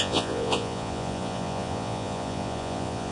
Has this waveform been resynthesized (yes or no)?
yes